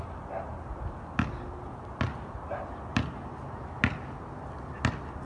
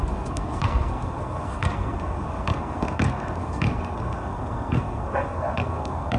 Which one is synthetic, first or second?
second